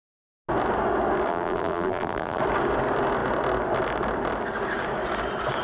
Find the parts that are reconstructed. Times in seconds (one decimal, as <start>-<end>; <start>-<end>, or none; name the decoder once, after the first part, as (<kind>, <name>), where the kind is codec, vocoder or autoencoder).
1.3-2.4 (vocoder, BigVGAN v2)